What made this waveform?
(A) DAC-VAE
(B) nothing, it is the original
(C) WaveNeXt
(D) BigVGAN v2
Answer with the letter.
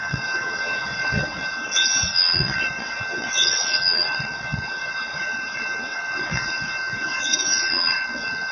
C